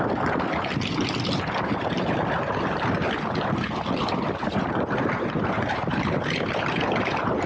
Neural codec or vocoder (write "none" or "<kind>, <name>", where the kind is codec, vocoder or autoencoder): none